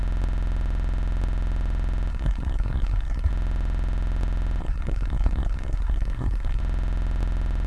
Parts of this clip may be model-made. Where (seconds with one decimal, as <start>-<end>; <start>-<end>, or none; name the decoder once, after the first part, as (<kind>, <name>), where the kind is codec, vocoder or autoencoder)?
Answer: 2.1-3.3 (codec, SNAC); 4.6-6.6